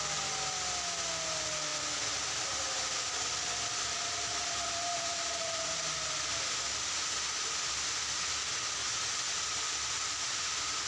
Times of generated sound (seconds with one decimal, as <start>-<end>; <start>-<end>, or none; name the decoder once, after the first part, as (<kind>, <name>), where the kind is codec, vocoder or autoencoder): 1.7-2.6 (vocoder, BigVGAN v2); 4.3-5.7